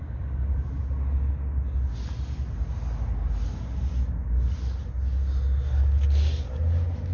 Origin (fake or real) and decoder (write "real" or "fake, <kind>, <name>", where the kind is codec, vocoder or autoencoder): real